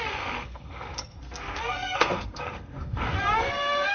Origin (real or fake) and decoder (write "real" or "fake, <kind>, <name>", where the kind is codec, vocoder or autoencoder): fake, codec, SNAC